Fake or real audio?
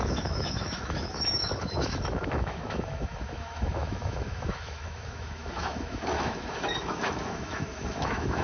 fake